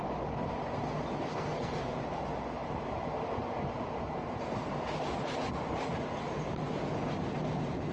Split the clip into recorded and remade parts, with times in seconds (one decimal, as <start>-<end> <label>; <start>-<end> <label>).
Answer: 0.0-1.3 recorded; 1.3-1.9 remade; 1.9-7.9 recorded